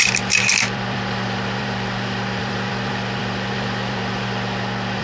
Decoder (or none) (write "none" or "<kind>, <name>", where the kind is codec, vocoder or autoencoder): vocoder, BigVGAN v2